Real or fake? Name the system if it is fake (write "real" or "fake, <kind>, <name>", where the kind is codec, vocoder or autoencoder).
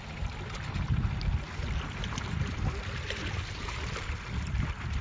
fake, vocoder, BigVGAN v2